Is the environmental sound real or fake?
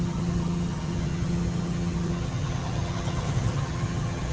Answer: fake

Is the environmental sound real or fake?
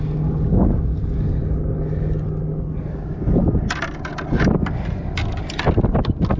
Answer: real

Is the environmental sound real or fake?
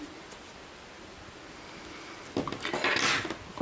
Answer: real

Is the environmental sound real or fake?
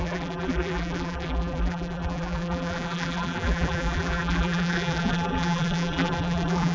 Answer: fake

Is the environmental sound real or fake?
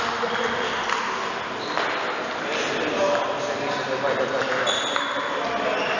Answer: real